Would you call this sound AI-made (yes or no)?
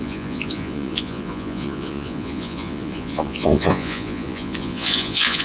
yes